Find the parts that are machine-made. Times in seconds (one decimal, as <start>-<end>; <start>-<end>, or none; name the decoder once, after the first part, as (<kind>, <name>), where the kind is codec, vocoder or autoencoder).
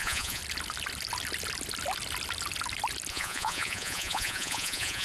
0.0-0.4 (vocoder, Vocos); 3.1-5.0